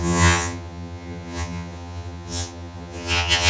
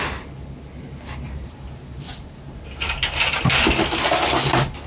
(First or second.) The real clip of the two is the second